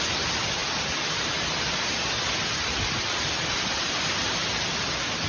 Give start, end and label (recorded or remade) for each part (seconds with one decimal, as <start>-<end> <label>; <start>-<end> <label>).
0.0-5.3 recorded